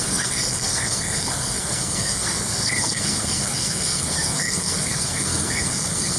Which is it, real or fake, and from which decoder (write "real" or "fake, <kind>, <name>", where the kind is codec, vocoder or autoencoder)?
fake, codec, SNAC